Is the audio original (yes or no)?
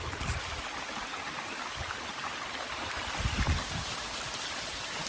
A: yes